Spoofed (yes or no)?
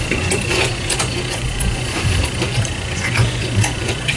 yes